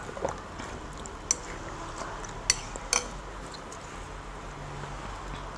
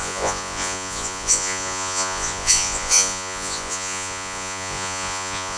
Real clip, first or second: first